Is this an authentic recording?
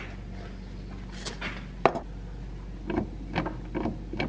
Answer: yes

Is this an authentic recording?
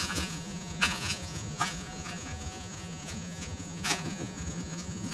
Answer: no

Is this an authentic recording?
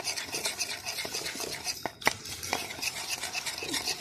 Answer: yes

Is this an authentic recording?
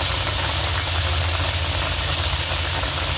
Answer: yes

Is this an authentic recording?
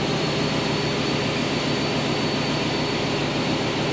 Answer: yes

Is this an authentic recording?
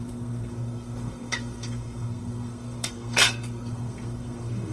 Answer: no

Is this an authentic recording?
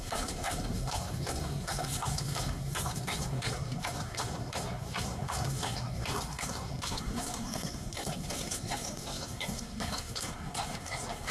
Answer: no